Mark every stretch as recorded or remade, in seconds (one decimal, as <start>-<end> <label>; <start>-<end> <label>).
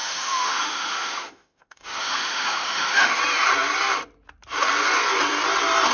0.0-3.2 remade; 3.2-5.9 recorded